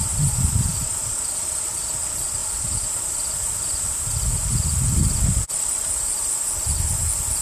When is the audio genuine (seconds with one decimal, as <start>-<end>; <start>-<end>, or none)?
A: 0.0-7.4